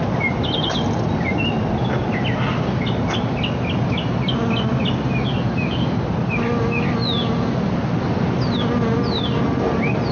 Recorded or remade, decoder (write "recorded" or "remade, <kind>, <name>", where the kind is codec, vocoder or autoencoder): recorded